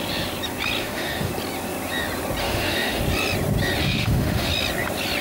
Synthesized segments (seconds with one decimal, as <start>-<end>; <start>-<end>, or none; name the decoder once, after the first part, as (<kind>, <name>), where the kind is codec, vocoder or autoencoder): 0.8-1.3 (autoencoder, DAC-VAE); 2.4-3.0; 3.8-4.5